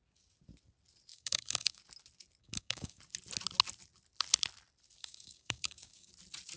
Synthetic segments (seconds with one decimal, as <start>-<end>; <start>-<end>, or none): 1.1-1.8; 2.4-3.0; 5.0-6.1